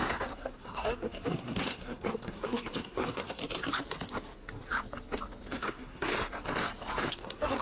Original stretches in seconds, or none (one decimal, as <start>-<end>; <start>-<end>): 3.4-5.5; 6.1-7.1